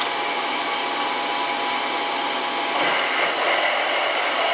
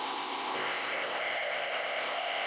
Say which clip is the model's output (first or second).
second